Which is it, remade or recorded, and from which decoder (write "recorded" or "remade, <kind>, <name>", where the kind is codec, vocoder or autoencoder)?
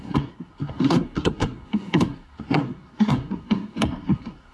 remade, codec, SNAC